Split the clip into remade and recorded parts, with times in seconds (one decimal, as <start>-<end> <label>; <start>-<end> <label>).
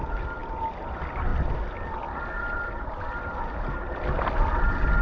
0.0-5.0 recorded